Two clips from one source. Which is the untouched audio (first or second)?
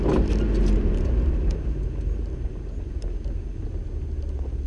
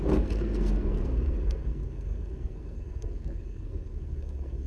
first